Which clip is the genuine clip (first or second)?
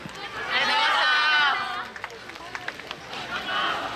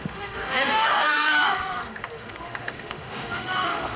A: first